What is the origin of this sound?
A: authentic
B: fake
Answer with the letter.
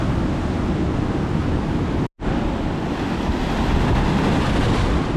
A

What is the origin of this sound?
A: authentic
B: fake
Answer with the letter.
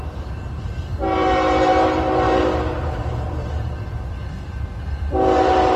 B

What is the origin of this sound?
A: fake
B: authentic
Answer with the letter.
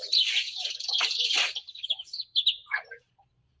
A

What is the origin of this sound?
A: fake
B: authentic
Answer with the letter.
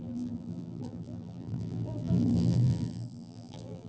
A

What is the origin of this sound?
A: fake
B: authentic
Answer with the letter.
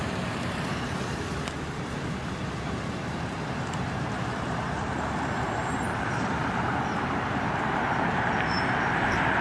A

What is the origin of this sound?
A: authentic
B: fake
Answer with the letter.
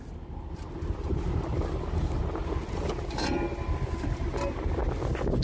A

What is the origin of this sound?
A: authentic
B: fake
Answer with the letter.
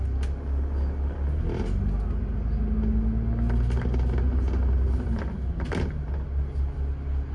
A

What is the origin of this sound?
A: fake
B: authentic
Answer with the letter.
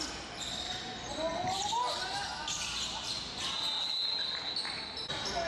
B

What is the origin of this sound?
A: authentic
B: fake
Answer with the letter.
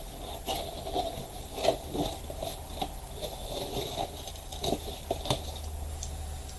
A